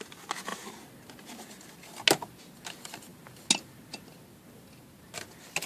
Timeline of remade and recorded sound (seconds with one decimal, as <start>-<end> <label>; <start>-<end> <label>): 0.0-5.7 recorded

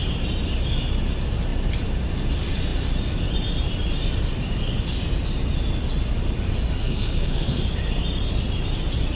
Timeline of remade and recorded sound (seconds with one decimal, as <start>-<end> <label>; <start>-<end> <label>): 0.0-6.8 recorded; 6.8-7.6 remade; 7.6-9.1 recorded